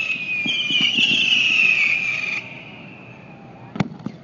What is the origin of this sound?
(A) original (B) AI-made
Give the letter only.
A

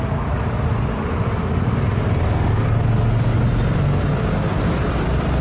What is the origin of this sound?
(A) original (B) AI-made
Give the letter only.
A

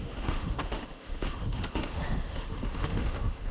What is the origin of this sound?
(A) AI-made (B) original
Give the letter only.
A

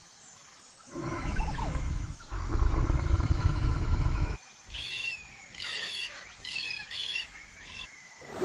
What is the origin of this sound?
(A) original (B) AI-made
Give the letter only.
B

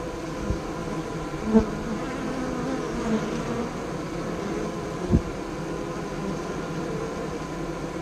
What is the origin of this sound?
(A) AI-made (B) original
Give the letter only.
B